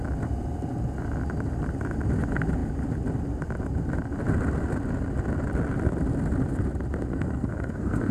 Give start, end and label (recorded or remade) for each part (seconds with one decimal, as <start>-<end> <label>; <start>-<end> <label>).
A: 0.0-7.1 recorded; 7.1-8.1 remade